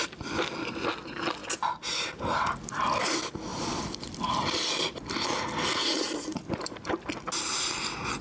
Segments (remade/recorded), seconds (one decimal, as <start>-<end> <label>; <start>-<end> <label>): 0.0-3.5 recorded; 3.5-5.8 remade; 5.8-6.3 recorded; 6.3-7.1 remade; 7.1-8.2 recorded